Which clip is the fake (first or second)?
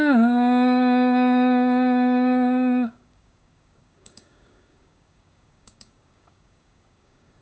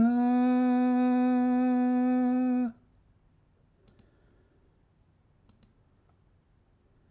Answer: first